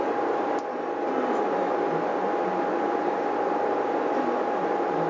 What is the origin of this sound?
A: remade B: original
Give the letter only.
B